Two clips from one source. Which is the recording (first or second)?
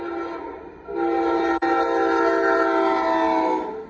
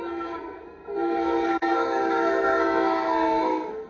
first